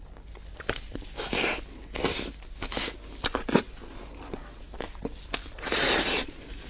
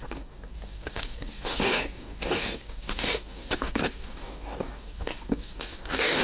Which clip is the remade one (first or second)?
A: second